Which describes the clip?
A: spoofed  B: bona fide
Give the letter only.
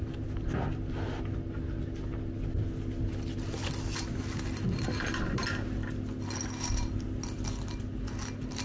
B